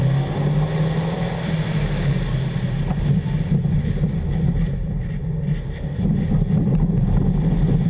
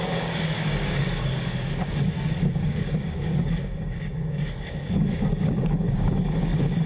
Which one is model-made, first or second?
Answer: second